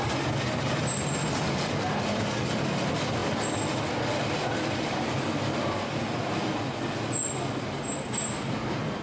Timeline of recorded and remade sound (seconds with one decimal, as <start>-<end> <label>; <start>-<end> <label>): 0.0-9.0 recorded